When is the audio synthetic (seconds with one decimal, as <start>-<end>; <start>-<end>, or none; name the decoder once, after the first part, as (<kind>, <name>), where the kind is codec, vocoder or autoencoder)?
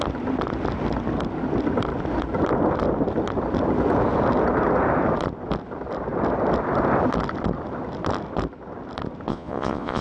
9.3-10.0 (vocoder, Vocos)